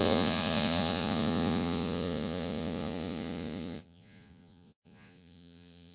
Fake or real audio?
fake